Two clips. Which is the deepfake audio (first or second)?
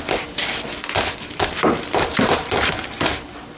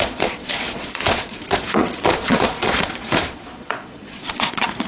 second